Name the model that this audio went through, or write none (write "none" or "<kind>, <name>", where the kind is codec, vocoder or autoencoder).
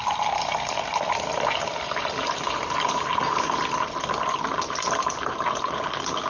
vocoder, BigVGAN v2